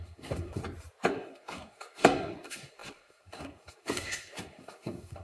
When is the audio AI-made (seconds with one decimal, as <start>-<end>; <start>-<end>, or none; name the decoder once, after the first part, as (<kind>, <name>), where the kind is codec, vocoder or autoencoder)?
0.0-0.6 (codec, SNAC); 1.1-5.2